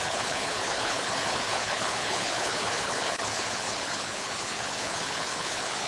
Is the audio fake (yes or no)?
yes